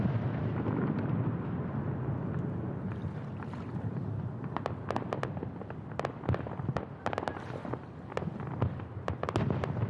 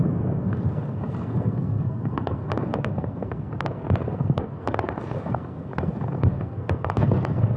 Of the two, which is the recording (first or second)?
first